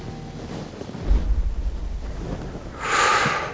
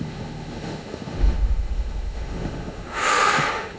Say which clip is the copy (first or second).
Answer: second